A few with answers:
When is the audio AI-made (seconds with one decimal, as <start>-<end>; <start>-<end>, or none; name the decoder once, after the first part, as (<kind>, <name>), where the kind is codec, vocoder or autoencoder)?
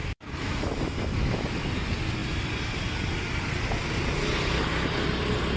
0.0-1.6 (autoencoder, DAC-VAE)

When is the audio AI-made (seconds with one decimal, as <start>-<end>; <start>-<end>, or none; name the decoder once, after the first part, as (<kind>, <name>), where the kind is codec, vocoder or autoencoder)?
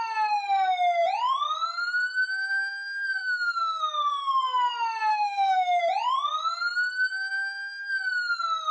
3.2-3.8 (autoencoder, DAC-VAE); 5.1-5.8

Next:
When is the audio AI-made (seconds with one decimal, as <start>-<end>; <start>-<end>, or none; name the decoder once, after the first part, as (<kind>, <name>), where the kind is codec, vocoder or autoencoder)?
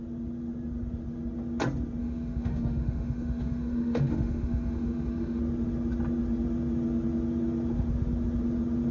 2.0-5.4 (autoencoder, DAC-VAE)